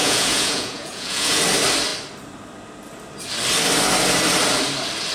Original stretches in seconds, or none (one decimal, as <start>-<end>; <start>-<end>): 1.4-5.1